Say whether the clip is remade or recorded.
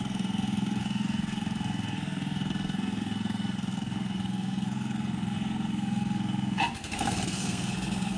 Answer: remade